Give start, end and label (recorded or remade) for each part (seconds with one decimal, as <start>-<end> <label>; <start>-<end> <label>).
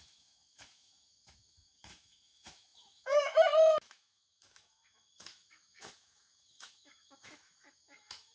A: 0.0-8.3 remade